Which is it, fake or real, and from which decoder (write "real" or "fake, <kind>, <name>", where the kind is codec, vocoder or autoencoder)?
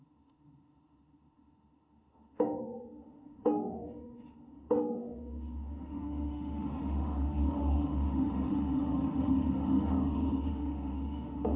fake, autoencoder, DAC-VAE